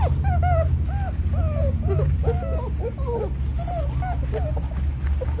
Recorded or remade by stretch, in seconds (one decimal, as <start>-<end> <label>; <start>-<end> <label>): 0.0-5.4 recorded